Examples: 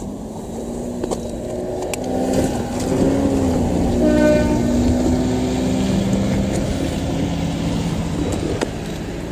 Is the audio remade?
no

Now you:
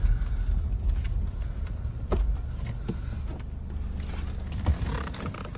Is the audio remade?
no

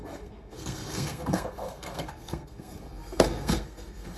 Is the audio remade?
yes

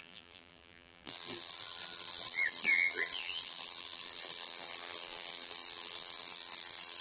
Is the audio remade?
yes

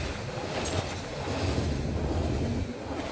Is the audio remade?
no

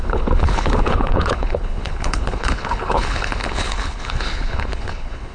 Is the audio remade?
yes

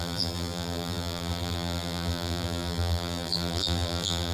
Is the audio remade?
yes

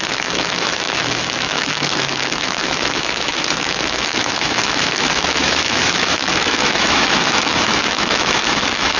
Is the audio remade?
yes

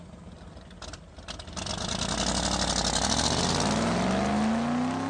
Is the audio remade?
no